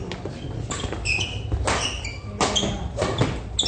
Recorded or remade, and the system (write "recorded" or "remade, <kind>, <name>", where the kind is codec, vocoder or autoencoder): recorded